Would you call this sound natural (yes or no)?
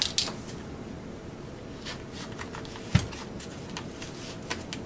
yes